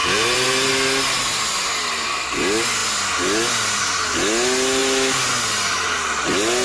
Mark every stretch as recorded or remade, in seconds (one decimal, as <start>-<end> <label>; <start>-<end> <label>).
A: 0.0-0.7 remade; 0.7-6.6 recorded